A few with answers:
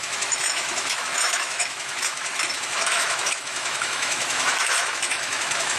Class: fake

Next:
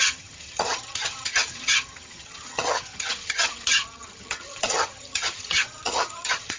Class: fake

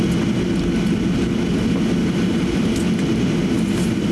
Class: real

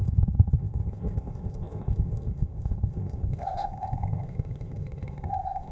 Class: fake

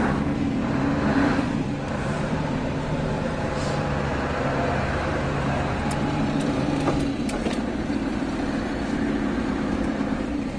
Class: fake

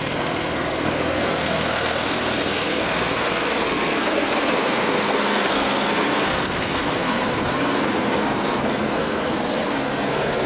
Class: fake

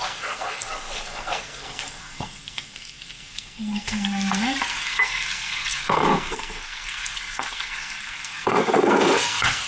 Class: fake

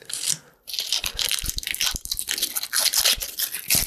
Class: real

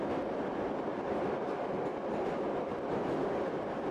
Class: real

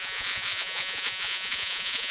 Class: fake